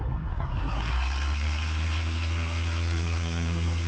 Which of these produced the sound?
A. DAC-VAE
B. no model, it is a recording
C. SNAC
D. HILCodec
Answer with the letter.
C